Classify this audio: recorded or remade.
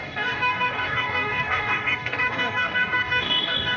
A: remade